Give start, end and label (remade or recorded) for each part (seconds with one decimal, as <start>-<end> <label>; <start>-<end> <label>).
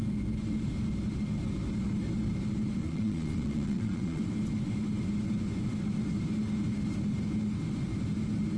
0.0-2.8 recorded; 2.8-4.2 remade; 4.2-8.6 recorded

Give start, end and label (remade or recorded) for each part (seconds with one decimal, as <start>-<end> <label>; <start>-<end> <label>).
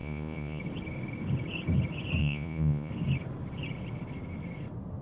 0.0-0.6 remade; 0.6-2.2 recorded; 2.2-2.9 remade; 2.9-5.0 recorded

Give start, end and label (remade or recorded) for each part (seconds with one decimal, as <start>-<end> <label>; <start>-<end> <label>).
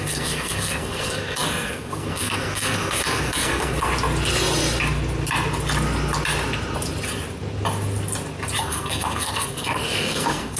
0.0-3.9 remade; 3.9-8.6 recorded; 8.6-10.6 remade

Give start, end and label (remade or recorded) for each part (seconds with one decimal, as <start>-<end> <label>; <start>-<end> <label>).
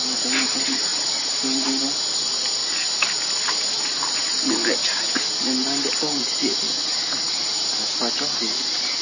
0.0-9.0 recorded